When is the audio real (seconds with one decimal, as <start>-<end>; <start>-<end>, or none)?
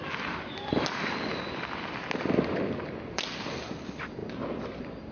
0.0-5.1